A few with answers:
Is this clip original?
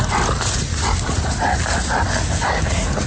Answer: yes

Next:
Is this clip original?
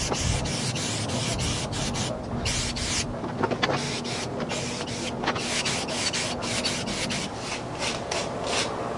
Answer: yes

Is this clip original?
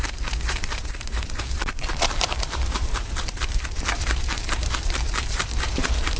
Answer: no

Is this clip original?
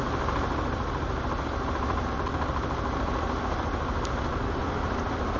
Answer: yes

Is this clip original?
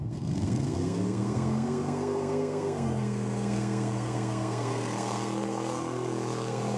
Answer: no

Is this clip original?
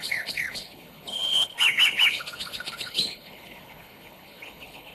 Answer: no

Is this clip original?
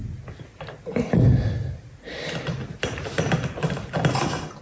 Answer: yes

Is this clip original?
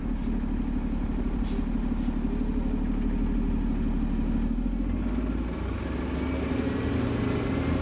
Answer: yes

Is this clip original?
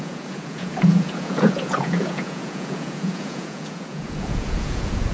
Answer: no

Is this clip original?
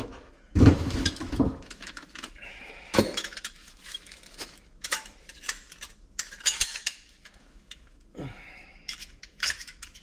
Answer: no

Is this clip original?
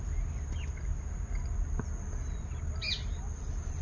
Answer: yes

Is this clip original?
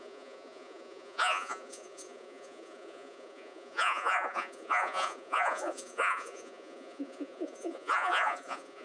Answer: no